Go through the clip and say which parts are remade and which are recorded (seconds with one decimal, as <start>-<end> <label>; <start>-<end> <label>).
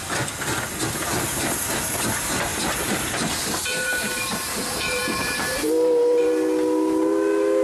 0.0-2.5 recorded; 2.5-6.2 remade; 6.2-7.6 recorded